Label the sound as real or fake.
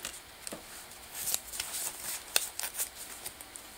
real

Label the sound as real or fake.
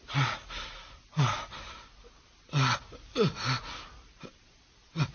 real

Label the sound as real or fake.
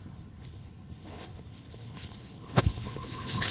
fake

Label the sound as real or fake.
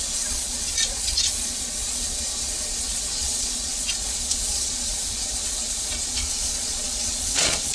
fake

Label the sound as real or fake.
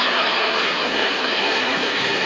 fake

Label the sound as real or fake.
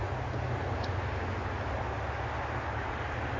real